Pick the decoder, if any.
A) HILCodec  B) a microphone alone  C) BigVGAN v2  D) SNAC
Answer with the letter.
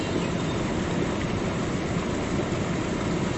B